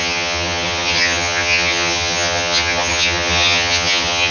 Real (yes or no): no